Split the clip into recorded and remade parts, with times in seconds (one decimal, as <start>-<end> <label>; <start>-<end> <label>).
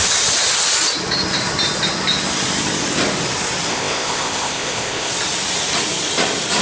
0.0-3.7 recorded; 3.7-5.1 remade; 5.1-6.6 recorded